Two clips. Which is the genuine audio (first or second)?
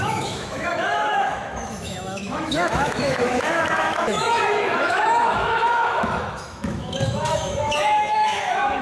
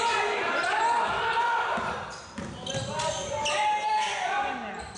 second